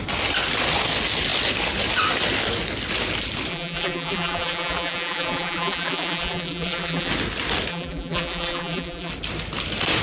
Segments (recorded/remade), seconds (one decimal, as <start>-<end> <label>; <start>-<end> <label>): 0.0-3.5 recorded; 3.5-7.1 remade; 7.1-7.7 recorded; 7.7-9.1 remade; 9.1-10.0 recorded